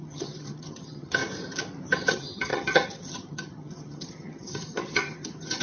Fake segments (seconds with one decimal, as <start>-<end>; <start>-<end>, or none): 0.0-1.2; 2.1-5.6